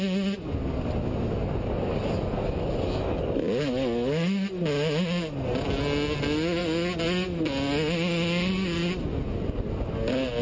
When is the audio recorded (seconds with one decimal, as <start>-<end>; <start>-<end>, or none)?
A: 0.0-10.4